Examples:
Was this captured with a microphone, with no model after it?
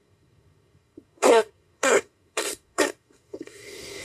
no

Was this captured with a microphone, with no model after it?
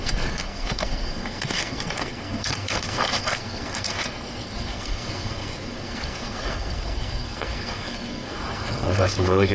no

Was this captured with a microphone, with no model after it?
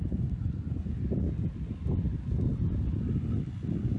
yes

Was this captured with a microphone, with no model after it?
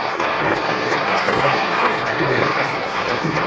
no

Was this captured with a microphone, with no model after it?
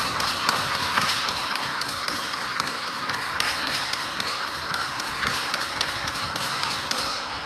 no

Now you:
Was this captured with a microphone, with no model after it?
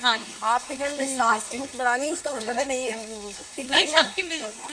no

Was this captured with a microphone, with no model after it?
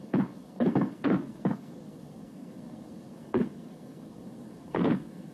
no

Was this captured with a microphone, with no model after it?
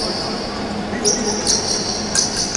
yes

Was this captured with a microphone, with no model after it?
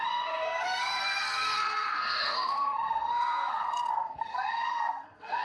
no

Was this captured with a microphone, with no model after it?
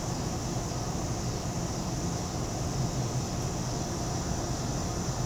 yes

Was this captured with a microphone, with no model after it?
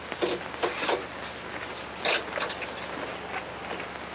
yes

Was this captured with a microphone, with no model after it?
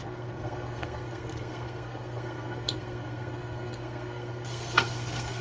no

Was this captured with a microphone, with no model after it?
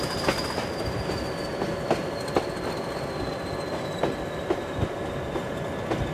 yes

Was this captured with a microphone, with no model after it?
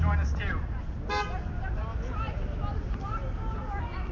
yes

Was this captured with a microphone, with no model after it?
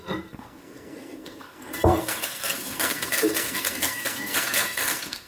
no